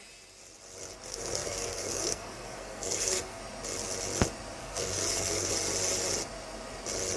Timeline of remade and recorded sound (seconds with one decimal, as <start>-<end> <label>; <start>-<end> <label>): 0.0-1.1 recorded; 1.1-3.4 remade; 3.4-4.6 recorded; 4.6-5.5 remade; 5.5-7.2 recorded